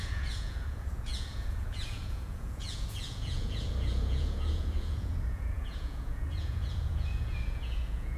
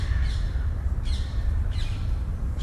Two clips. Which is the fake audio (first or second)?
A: first